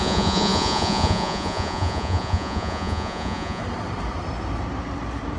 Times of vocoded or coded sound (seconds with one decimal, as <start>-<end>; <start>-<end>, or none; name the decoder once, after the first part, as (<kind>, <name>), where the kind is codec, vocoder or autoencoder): 0.0-3.6 (vocoder, Vocos)